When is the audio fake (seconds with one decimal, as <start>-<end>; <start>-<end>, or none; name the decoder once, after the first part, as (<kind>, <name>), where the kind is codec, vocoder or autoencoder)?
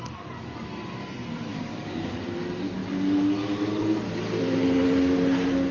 1.5-2.2 (codec, DAC)